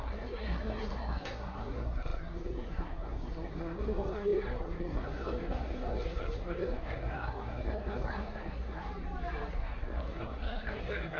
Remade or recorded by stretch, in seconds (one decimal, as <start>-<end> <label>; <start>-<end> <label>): 0.0-8.9 remade; 8.9-9.5 recorded; 9.5-11.2 remade